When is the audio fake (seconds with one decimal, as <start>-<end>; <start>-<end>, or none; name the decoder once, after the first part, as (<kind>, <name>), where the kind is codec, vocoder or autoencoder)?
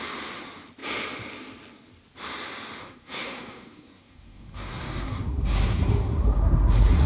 2.8-7.1 (codec, SNAC)